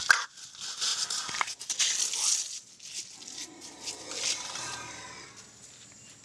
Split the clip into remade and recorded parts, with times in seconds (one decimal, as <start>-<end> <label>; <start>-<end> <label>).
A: 0.0-6.2 recorded